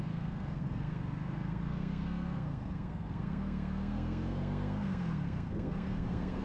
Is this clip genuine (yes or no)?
no